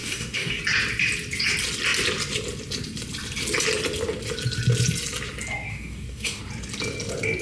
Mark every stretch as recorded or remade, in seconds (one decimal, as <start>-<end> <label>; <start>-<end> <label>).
0.0-0.6 remade; 0.6-5.7 recorded; 5.7-6.4 remade; 6.4-7.4 recorded